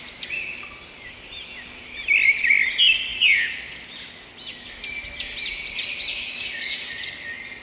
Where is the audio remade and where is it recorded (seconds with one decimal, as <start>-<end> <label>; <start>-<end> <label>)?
0.0-6.1 recorded; 6.1-6.9 remade; 6.9-7.6 recorded